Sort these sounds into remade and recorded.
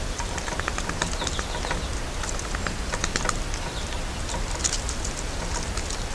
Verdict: recorded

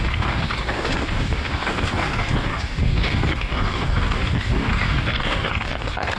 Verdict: remade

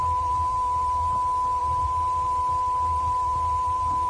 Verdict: remade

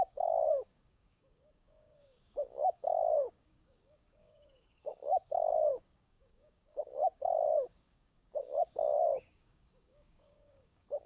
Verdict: remade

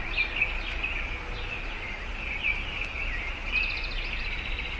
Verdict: recorded